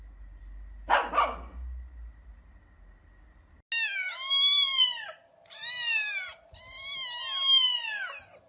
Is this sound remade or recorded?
recorded